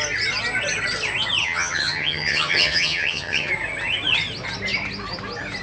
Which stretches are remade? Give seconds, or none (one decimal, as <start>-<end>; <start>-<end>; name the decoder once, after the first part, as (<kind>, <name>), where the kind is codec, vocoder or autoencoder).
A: 1.4-3.5 (vocoder, HiFi-GAN)